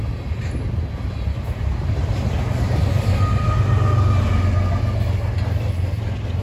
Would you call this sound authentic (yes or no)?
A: yes